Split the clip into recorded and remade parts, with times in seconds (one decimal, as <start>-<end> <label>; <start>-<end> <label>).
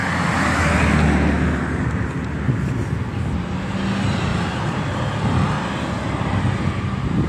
0.0-4.3 recorded; 4.3-5.0 remade; 5.0-7.3 recorded